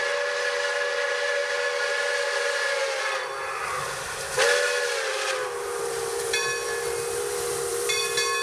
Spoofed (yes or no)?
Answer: no